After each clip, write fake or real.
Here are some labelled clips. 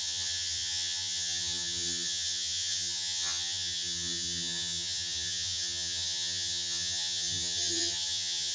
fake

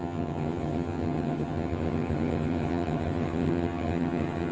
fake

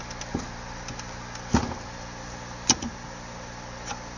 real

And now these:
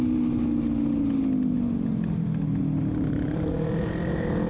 real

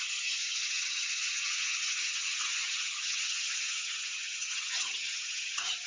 fake